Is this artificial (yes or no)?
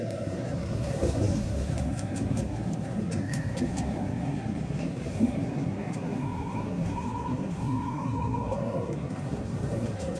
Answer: yes